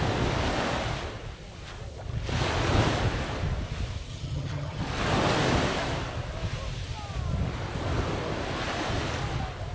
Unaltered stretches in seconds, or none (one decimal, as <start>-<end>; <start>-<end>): 0.0-4.1; 4.8-9.7